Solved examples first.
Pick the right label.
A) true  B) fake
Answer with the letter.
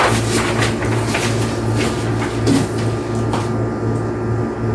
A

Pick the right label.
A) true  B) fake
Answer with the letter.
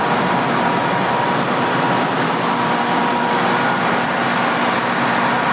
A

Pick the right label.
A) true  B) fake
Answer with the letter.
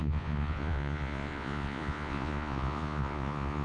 B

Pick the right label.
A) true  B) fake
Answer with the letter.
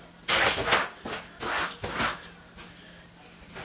A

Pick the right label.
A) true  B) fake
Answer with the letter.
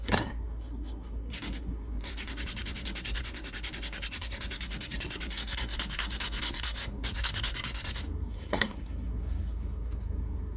B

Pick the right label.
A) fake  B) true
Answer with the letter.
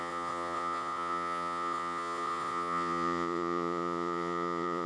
A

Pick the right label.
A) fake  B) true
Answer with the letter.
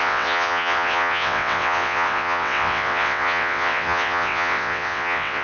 A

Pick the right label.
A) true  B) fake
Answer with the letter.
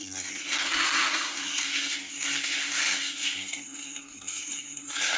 B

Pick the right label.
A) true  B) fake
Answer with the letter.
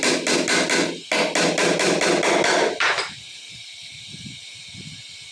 A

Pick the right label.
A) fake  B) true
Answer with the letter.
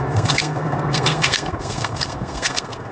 A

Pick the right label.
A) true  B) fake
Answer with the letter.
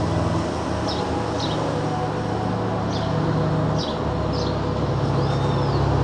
A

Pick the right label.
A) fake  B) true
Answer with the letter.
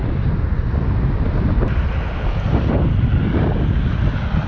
B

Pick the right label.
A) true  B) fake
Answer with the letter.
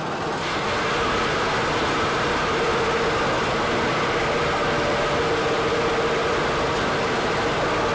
A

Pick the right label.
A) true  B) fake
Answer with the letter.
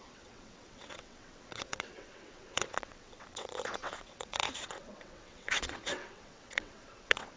B